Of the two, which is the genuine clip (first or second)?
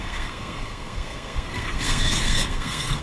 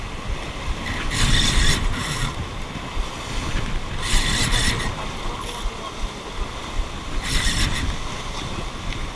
second